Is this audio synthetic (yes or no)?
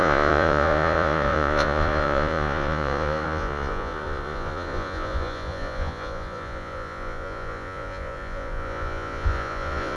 yes